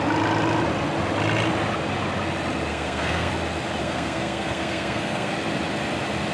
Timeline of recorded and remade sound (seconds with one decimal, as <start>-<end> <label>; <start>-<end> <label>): 0.0-2.7 recorded; 2.7-3.3 remade; 3.3-3.8 recorded; 3.8-5.3 remade; 5.3-6.3 recorded